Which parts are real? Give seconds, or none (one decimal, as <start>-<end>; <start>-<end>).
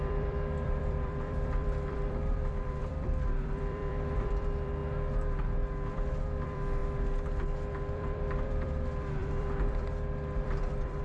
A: 4.8-5.9; 6.8-7.7